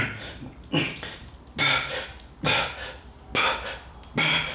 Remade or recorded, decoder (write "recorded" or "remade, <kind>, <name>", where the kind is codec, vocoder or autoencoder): recorded